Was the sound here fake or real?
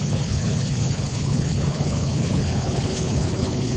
fake